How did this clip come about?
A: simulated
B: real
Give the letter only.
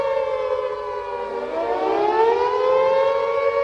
B